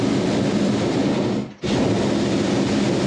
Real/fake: real